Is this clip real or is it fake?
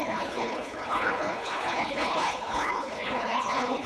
fake